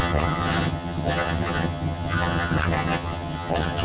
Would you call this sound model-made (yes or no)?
yes